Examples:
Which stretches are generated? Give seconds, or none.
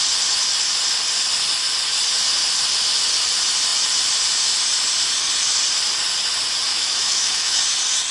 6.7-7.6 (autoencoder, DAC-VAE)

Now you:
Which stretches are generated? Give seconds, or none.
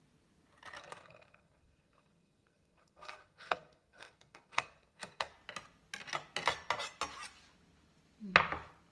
0.8-5.3 (codec, SNAC)